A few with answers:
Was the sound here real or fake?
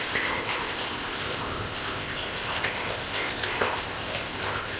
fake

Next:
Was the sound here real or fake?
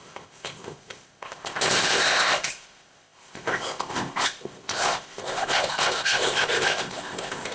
fake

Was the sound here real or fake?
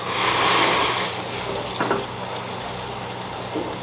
real